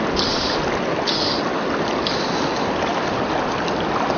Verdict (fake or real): real